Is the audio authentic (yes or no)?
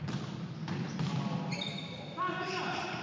yes